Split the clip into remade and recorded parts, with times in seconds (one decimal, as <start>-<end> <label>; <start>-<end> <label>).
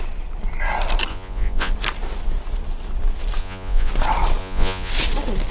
0.0-1.1 recorded; 1.1-1.7 remade; 1.7-3.4 recorded; 3.4-3.9 remade; 3.9-4.4 recorded; 4.4-4.9 remade; 4.9-5.5 recorded